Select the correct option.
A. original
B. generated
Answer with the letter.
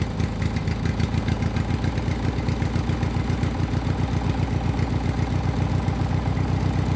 A